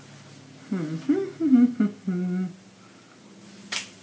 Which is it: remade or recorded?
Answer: recorded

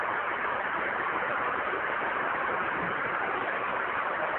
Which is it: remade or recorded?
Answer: remade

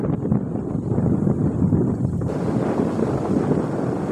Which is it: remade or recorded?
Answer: recorded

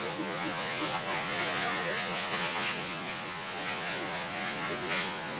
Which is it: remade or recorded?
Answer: remade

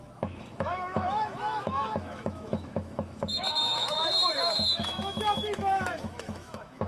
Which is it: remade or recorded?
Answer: remade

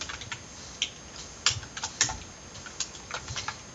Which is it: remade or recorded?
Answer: recorded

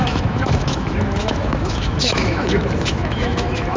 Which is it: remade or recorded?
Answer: remade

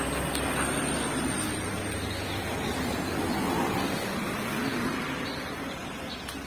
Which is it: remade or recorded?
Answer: recorded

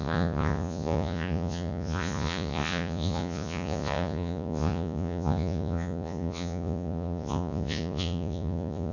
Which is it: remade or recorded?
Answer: remade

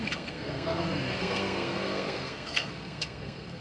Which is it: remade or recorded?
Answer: remade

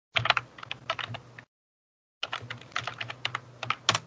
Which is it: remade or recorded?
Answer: recorded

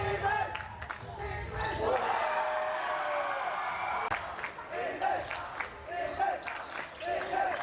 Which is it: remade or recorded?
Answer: recorded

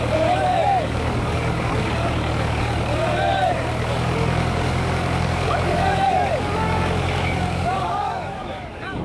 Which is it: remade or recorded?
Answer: remade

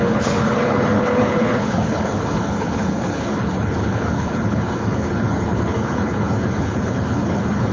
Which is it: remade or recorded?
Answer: remade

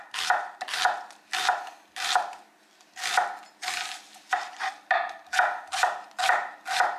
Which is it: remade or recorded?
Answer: recorded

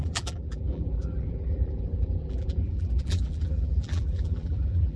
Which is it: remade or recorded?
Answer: remade